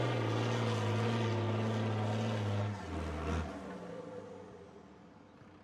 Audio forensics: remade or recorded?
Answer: recorded